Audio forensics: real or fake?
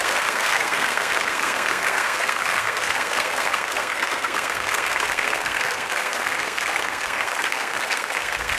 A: fake